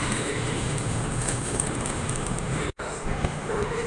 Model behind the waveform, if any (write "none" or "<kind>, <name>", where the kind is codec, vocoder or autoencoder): autoencoder, DAC-VAE